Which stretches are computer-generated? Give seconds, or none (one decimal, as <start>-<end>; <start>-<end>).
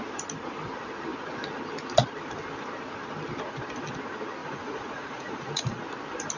4.4-5.8